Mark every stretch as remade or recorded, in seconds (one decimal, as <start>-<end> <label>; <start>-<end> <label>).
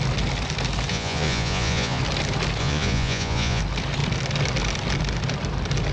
0.0-0.9 recorded; 0.9-2.0 remade; 2.0-2.6 recorded; 2.6-3.6 remade; 3.6-5.9 recorded